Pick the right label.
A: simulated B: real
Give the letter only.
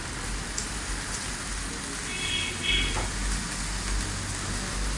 B